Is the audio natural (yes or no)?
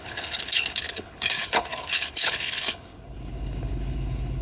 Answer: no